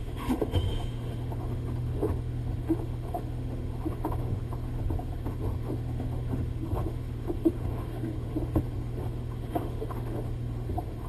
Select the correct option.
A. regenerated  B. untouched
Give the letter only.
A